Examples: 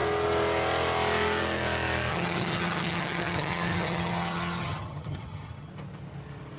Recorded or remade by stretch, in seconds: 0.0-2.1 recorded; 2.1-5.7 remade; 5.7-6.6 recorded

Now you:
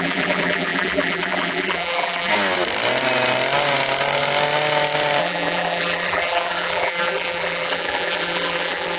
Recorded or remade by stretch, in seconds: 0.0-2.3 remade; 2.3-5.2 recorded; 5.2-9.0 remade